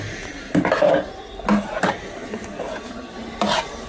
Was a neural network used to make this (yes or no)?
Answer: no